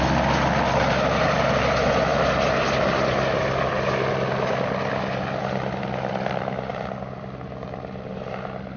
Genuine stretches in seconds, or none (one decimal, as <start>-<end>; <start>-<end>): 0.0-8.8